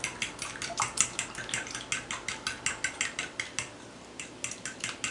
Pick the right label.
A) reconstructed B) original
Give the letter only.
B